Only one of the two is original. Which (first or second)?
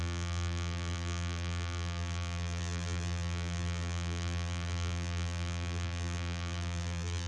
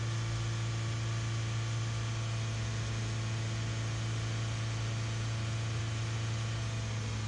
second